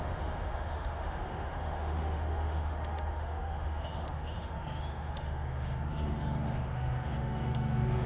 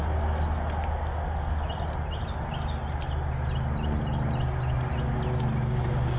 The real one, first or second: second